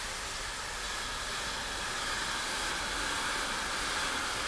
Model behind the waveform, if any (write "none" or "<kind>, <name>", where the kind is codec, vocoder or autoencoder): none